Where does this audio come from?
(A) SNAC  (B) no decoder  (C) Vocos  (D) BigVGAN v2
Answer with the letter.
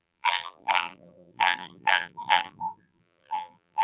D